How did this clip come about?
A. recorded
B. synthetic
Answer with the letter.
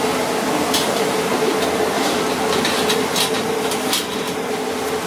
A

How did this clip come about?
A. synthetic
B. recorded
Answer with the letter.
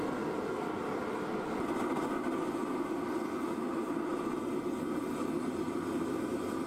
B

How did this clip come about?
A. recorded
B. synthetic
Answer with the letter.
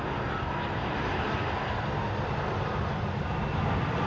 A